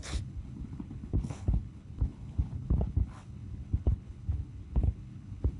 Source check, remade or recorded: remade